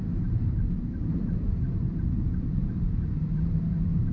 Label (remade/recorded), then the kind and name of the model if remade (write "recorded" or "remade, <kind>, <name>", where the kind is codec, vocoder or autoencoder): remade, vocoder, BigVGAN v2